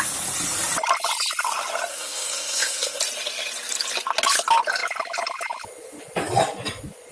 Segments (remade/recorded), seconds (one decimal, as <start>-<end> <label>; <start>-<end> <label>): 0.0-1.9 recorded; 1.9-3.0 remade; 3.0-7.1 recorded